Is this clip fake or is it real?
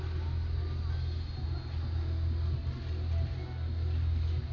real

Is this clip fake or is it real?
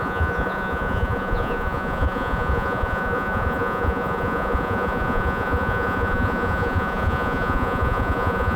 fake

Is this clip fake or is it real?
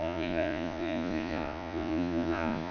fake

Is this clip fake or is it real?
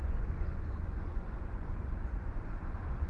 fake